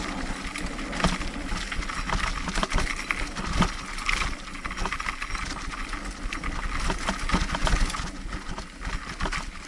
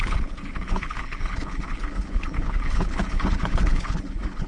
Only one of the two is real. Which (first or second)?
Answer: first